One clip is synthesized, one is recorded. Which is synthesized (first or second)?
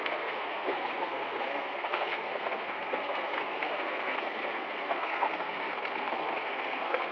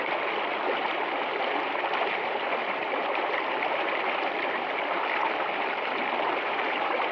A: first